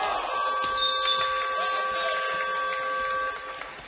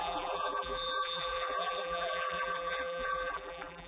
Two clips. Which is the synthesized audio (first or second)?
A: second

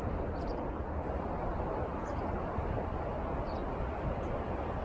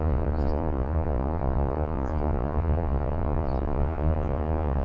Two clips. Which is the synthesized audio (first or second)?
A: second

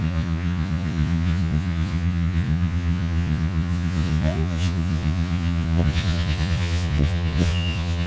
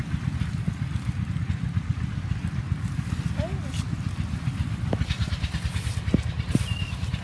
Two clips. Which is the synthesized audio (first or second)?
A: first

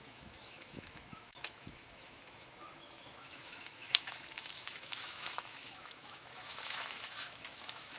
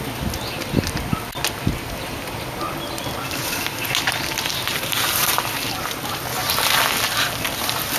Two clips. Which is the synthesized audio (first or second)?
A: first